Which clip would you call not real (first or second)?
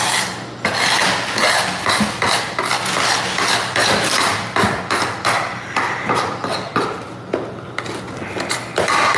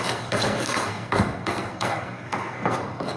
second